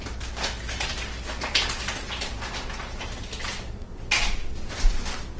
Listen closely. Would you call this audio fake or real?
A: real